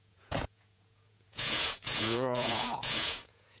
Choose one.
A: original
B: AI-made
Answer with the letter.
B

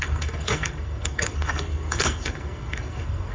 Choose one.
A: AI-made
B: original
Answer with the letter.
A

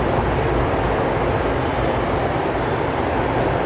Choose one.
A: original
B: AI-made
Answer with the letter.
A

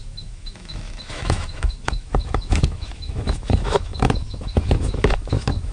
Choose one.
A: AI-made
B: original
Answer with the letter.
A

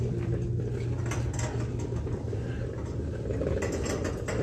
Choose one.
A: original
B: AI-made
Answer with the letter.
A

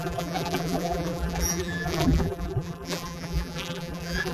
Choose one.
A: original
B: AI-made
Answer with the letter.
B